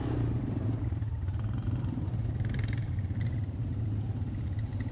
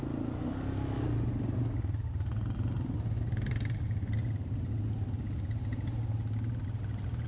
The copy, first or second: first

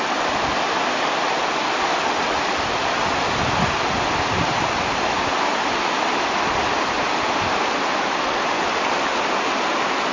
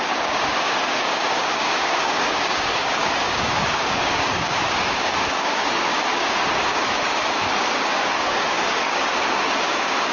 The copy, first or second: second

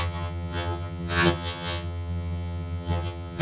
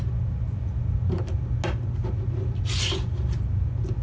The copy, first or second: first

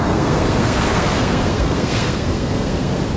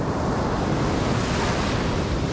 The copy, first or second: first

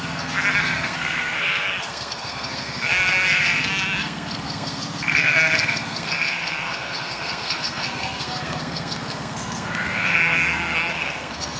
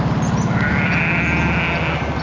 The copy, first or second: first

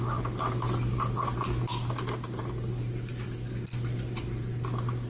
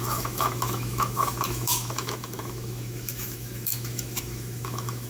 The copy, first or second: second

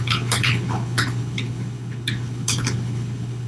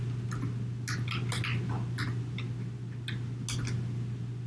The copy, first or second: first